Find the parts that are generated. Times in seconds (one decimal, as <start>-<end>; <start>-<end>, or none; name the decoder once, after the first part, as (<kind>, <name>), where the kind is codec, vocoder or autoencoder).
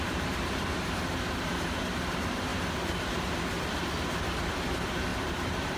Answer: 0.0-2.5 (vocoder, BigVGAN v2); 4.0-5.8